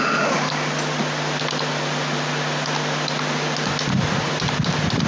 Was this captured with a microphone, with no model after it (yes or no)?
yes